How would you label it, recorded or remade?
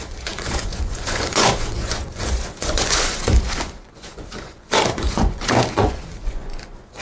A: remade